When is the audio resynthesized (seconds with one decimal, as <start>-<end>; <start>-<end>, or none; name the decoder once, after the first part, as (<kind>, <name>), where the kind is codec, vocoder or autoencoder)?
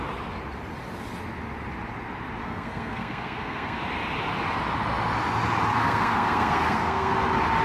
2.4-3.8 (codec, SNAC); 5.7-7.1